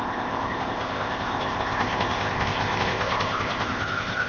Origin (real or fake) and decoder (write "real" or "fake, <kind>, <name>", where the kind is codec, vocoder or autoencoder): fake, codec, ZipCodec